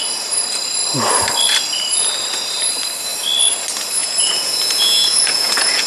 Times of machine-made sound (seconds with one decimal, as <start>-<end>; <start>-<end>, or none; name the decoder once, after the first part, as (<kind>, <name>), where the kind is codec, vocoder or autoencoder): 4.0-5.9 (vocoder, Vocos)